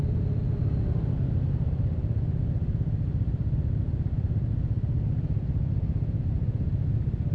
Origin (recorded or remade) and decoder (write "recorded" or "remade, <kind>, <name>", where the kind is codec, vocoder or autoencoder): recorded